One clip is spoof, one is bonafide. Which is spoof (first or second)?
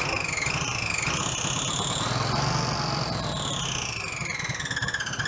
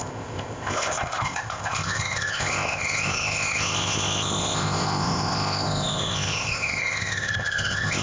second